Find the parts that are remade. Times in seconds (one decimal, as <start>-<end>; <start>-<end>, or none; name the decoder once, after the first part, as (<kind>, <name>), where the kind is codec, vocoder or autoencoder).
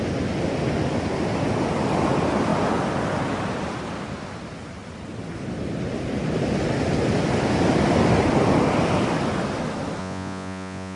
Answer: 10.0-11.0 (vocoder, Vocos)